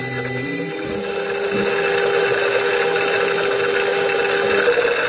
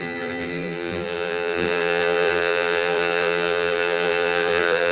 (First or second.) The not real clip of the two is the second